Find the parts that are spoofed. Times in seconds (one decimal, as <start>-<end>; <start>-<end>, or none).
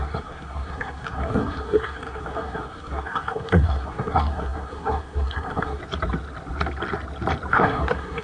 0.0-5.8; 7.5-8.2